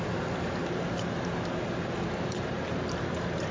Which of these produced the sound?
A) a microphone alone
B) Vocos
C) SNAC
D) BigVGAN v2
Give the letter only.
A